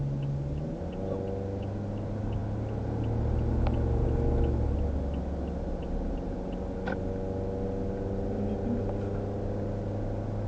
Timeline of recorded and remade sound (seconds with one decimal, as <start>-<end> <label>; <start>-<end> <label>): 0.0-10.5 recorded